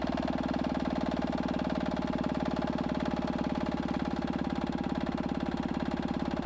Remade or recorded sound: recorded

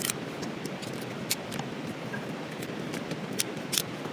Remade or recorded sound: remade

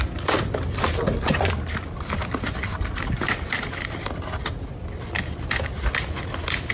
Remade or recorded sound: recorded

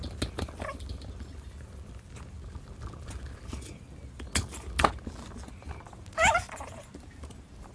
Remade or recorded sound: recorded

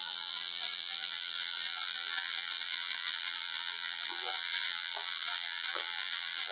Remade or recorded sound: remade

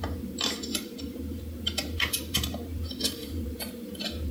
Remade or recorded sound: remade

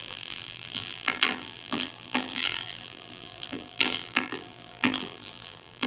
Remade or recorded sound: remade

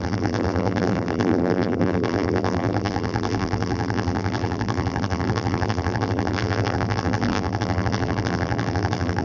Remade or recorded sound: remade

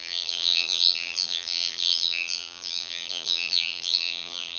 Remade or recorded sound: remade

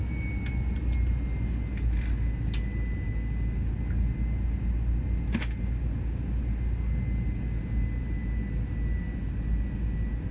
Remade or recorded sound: recorded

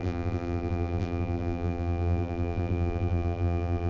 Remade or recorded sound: remade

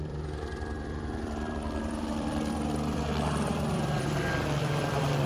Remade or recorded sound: remade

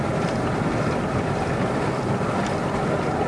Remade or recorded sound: remade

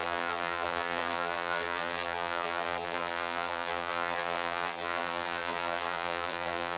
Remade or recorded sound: remade